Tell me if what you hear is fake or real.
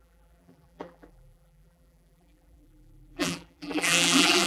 fake